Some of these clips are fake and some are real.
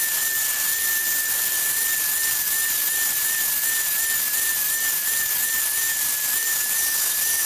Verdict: fake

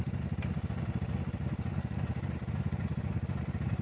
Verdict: real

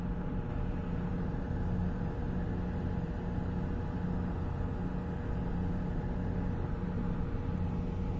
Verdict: real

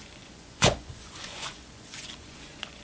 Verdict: fake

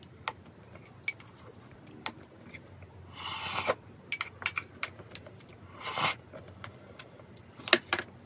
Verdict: real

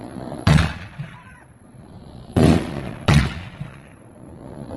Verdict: fake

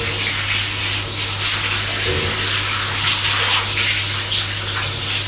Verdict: real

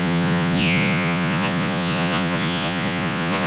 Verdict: fake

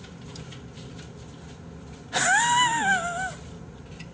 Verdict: real